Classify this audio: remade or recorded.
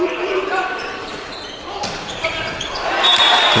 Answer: remade